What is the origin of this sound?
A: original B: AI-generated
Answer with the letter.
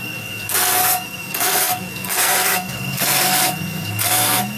B